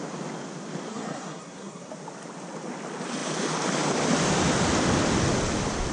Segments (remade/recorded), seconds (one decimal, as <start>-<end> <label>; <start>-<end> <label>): 0.0-0.9 recorded; 0.9-1.9 remade; 1.9-5.9 recorded